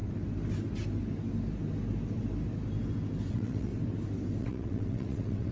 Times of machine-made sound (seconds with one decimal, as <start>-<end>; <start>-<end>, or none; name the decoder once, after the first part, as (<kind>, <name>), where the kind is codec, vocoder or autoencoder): 3.3-3.7 (vocoder, WaveNeXt); 4.4-5.5